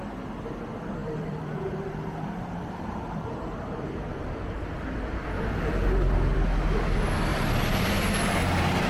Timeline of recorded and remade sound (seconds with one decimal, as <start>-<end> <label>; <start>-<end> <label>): 0.0-1.0 recorded; 1.0-4.7 remade; 4.7-7.3 recorded; 7.3-8.0 remade; 8.0-8.9 recorded